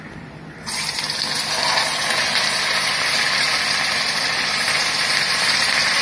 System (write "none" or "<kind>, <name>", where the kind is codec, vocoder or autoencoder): vocoder, BigVGAN v2